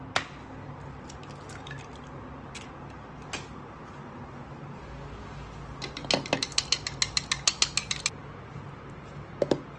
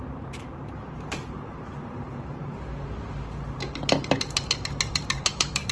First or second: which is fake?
second